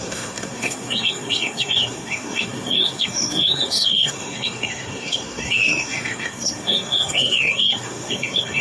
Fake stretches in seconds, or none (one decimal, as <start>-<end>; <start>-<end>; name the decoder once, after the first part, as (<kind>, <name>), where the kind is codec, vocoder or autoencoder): 0.0-8.6 (codec, SNAC)

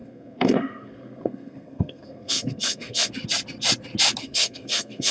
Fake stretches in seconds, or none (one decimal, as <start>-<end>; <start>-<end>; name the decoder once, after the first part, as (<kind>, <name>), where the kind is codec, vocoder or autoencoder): 0.0-3.1 (codec, SNAC); 4.2-5.1